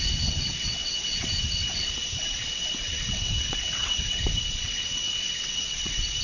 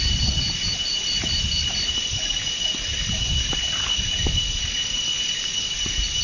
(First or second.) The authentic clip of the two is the second